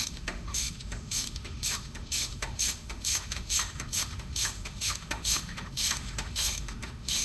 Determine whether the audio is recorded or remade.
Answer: remade